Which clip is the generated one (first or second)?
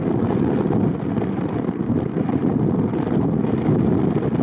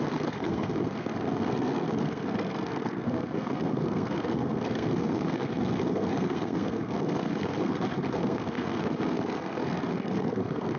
second